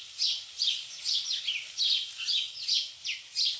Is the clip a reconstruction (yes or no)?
no